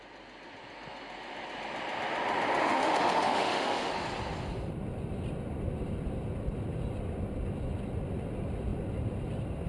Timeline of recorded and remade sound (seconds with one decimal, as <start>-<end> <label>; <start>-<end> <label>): 0.0-2.6 recorded; 2.6-3.9 remade; 3.9-9.7 recorded